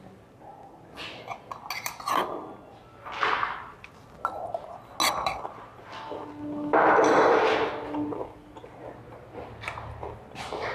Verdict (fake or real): real